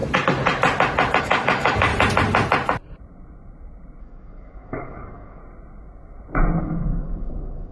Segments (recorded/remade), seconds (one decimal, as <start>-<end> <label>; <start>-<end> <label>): 0.0-1.2 recorded; 1.2-1.9 remade; 1.9-4.0 recorded; 4.0-5.4 remade; 5.4-6.6 recorded; 6.6-7.7 remade